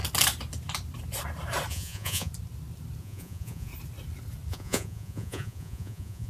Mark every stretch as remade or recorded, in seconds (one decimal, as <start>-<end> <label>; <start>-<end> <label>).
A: 0.0-1.7 recorded; 1.7-2.3 remade; 2.3-3.0 recorded; 3.0-3.7 remade; 3.7-4.5 recorded; 4.5-6.3 remade